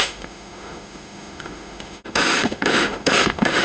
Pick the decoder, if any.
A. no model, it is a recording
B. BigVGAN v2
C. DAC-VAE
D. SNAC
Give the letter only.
C